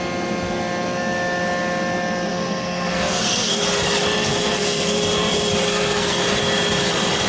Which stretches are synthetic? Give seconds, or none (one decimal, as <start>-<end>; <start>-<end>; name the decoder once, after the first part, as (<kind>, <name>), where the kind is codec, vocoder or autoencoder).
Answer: 2.3-3.6 (codec, SNAC); 4.2-5.0; 5.7-6.2